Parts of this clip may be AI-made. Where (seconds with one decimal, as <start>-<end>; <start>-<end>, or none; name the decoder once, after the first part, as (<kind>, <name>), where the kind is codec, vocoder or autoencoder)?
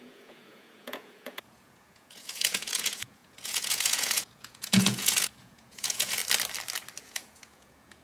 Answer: 0.0-6.2 (vocoder, Vocos); 7.0-8.0